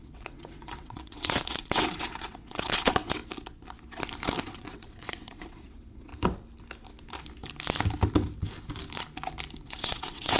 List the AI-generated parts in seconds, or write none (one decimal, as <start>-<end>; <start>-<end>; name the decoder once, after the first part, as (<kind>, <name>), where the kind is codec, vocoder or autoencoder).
0.0-3.2 (vocoder, WaveNeXt); 4.4-6.1; 9.6-10.4